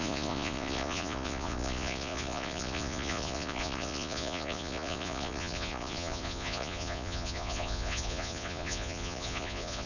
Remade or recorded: remade